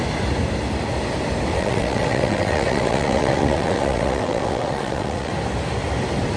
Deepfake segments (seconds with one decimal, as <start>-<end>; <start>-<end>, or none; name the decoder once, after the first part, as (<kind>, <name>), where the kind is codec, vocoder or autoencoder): 1.5-5.3 (vocoder, WaveNeXt)

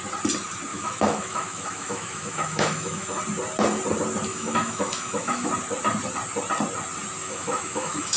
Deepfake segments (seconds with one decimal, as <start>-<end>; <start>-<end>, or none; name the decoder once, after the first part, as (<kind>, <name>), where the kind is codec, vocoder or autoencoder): 0.7-3.2 (autoencoder, DAC-VAE); 4.3-5.5; 7.2-8.2

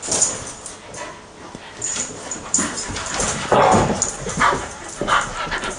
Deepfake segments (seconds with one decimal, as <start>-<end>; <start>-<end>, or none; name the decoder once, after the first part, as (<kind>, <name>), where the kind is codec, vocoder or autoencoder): 1.9-5.8 (vocoder, BigVGAN v2)

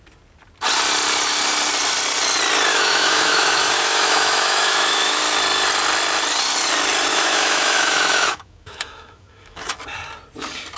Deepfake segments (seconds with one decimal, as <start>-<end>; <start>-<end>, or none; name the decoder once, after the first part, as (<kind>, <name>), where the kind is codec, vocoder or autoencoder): 2.7-5.2 (autoencoder, DAC-VAE); 7.1-9.8

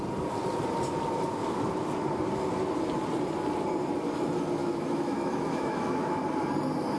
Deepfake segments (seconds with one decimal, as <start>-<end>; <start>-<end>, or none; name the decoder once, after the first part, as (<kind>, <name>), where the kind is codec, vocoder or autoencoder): 4.6-6.2 (autoencoder, DAC-VAE)

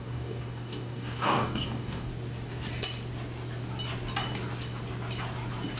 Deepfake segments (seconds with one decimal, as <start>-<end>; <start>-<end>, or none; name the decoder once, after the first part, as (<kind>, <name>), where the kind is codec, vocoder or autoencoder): 0.0-2.1 (codec, DAC)

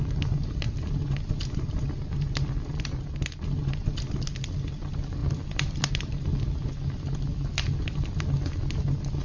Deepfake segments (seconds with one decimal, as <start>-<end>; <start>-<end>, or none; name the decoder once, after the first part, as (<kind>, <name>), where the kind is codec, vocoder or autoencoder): none

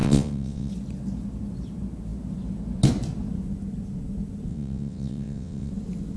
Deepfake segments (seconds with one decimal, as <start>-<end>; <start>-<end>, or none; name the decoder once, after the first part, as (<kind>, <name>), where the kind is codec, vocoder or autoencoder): 0.0-0.7 (vocoder, WaveNeXt); 4.5-5.7